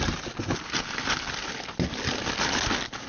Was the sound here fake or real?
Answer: real